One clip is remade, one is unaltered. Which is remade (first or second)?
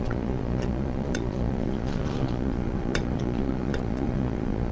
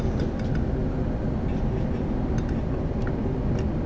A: first